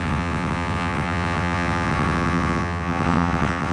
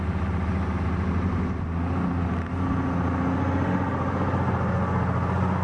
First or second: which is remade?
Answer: first